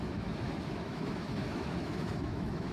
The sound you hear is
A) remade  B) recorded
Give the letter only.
A